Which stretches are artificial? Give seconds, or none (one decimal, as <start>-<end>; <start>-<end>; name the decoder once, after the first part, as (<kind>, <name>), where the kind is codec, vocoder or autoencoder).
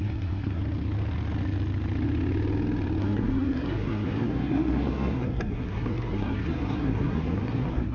0.0-0.6 (codec, SNAC); 3.0-7.9